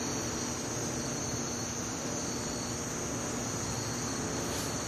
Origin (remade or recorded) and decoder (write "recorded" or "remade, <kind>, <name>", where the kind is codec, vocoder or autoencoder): recorded